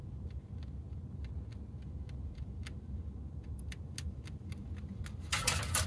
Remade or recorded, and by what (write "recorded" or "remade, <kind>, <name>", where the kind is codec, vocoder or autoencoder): recorded